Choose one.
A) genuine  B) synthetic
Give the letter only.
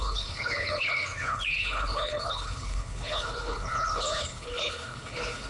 B